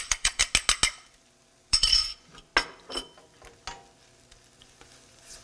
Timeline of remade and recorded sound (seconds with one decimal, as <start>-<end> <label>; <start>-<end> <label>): 0.0-0.4 remade; 0.4-1.7 recorded; 1.7-2.5 remade; 2.5-4.6 recorded; 4.6-5.4 remade